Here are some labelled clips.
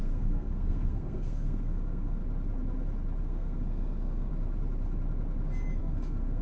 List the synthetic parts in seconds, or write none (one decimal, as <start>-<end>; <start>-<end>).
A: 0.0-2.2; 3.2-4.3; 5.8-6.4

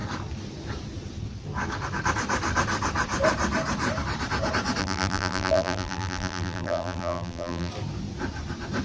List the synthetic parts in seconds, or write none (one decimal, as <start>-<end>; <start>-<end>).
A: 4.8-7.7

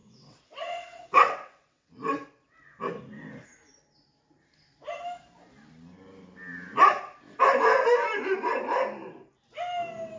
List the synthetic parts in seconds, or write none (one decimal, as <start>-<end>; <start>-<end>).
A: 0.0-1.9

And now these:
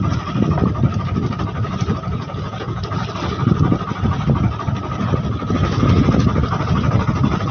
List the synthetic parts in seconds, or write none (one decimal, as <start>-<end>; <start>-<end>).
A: 2.1-2.8